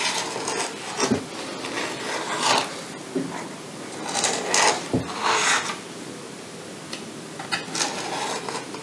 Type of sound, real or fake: real